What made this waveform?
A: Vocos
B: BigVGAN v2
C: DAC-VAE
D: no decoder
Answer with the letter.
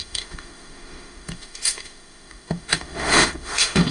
C